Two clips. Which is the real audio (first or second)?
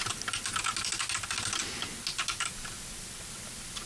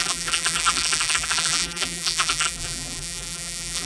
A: first